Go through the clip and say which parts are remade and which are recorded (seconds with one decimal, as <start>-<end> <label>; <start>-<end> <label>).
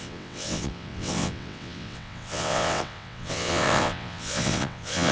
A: 0.0-5.1 remade